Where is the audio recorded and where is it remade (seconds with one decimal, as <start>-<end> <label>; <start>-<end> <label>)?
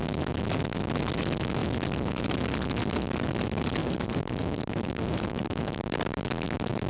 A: 0.0-3.8 recorded; 3.8-5.8 remade; 5.8-6.9 recorded